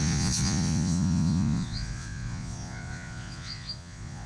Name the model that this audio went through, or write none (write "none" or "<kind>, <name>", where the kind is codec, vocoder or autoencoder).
vocoder, Vocos